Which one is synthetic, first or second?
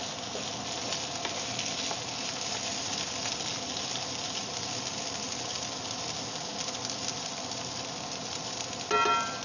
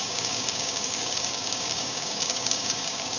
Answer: second